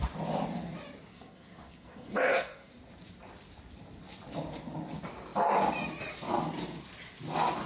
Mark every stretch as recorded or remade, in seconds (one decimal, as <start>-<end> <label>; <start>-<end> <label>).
0.0-1.1 recorded; 1.1-2.7 remade; 2.7-7.7 recorded